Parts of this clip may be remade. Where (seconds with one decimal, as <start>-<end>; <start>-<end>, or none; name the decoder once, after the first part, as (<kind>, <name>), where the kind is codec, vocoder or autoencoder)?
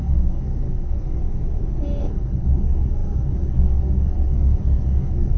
0.0-1.2 (codec, SNAC); 2.0-5.4